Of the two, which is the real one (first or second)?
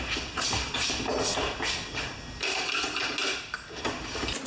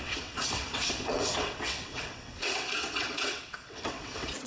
first